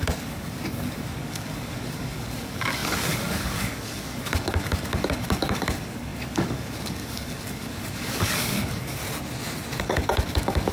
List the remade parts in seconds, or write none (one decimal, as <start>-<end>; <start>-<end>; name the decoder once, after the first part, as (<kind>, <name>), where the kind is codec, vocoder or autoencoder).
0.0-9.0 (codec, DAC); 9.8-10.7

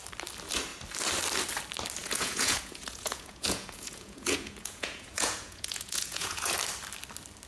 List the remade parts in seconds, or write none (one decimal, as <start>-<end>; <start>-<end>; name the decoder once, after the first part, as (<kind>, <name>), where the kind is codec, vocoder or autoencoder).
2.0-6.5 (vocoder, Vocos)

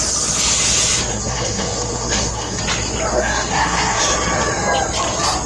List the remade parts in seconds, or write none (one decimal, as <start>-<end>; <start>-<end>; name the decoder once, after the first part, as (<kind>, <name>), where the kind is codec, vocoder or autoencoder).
1.1-2.6 (codec, SNAC); 3.1-4.0